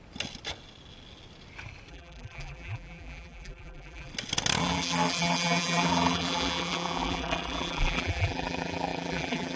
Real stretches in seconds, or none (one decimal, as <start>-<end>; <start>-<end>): 0.0-1.9; 4.1-4.6